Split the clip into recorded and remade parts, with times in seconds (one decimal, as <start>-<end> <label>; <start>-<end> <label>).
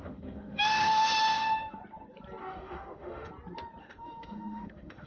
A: 0.0-1.8 remade; 1.8-2.4 recorded; 2.4-3.3 remade; 3.3-3.8 recorded; 3.8-5.1 remade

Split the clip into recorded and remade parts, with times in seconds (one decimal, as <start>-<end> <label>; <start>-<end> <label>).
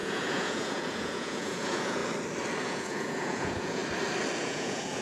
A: 0.0-2.0 remade; 2.0-2.6 recorded; 2.6-3.8 remade; 3.8-4.4 recorded; 4.4-5.0 remade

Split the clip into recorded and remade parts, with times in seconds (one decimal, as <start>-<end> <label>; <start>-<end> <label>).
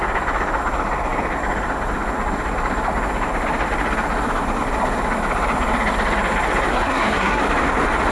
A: 0.0-6.7 recorded; 6.7-7.4 remade; 7.4-8.1 recorded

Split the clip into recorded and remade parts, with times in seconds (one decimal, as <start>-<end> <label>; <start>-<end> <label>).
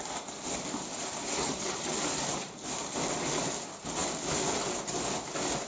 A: 0.0-1.4 recorded; 1.4-2.0 remade; 2.0-5.7 recorded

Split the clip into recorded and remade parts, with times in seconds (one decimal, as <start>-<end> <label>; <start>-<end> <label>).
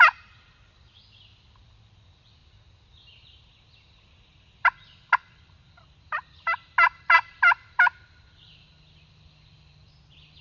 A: 0.0-2.4 remade; 2.4-5.4 recorded; 5.4-6.2 remade; 6.2-7.3 recorded; 7.3-10.4 remade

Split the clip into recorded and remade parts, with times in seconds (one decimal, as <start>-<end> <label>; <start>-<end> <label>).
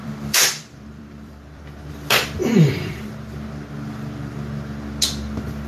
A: 0.0-1.6 remade; 1.6-2.4 recorded; 2.4-3.1 remade; 3.1-5.7 recorded